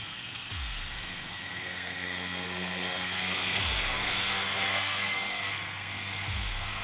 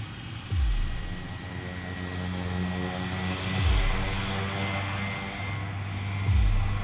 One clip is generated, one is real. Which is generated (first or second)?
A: first